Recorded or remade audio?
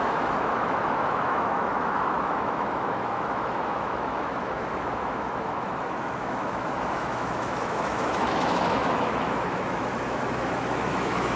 remade